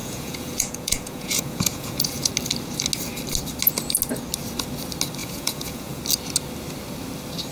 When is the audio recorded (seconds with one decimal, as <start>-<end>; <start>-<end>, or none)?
2.3-5.2; 6.0-7.5